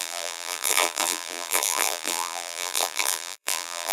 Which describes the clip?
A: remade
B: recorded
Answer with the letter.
A